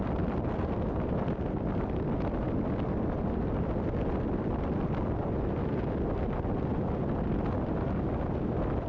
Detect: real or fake real